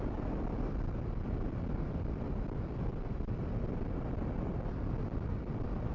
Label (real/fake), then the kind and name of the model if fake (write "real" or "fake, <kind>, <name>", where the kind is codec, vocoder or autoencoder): real